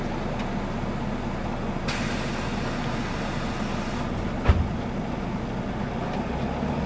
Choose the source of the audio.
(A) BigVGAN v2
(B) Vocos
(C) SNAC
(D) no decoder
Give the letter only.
D